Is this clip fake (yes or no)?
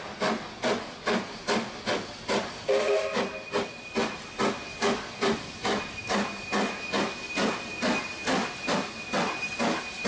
no